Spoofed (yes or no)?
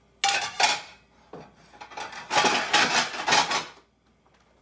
no